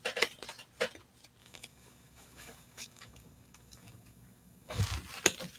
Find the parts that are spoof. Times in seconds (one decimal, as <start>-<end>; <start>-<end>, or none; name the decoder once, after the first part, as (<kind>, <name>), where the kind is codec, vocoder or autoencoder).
1.4-4.8 (codec, DAC)

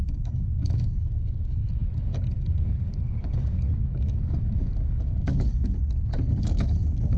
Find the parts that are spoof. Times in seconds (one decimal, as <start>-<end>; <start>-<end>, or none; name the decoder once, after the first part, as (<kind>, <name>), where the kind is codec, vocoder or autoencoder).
0.0-5.8 (codec, DAC); 6.4-7.2